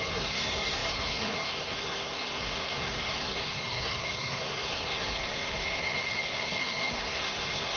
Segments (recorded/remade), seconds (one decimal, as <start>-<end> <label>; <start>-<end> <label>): 0.0-7.8 remade